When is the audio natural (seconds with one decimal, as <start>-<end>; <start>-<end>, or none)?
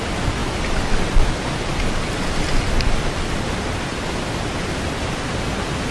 0.0-4.6; 5.5-5.9